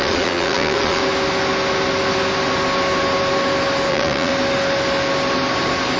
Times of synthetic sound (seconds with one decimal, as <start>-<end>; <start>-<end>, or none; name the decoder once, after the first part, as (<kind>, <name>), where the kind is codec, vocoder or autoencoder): 0.0-1.0 (vocoder, Vocos); 3.9-4.3